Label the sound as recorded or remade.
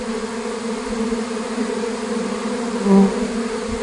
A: recorded